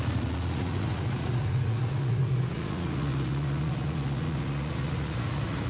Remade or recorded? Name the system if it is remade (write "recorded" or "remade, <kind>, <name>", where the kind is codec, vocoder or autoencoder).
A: remade, vocoder, Vocos